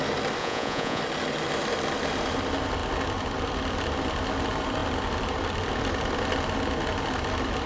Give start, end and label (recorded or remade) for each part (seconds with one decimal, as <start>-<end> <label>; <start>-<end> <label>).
0.0-0.4 recorded; 0.4-1.0 remade; 1.0-7.7 recorded